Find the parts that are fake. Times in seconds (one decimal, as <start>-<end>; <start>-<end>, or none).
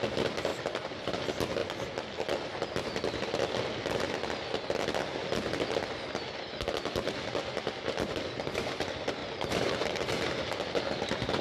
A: 0.5-1.2; 9.2-10.0